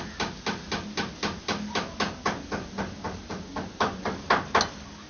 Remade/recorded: recorded